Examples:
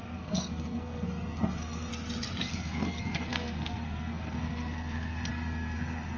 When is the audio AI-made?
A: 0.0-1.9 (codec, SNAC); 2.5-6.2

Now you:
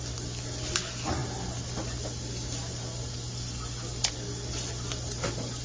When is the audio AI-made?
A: none

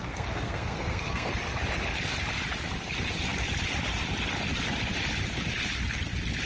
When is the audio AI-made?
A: 0.0-1.3 (codec, SNAC)

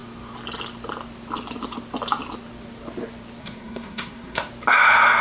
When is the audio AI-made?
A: 3.4-4.5 (codec, SNAC)

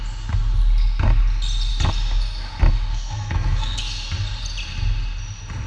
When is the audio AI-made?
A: 2.9-3.8 (codec, SNAC)

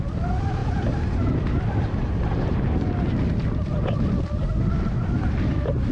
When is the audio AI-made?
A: none